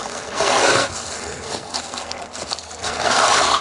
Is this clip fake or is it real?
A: fake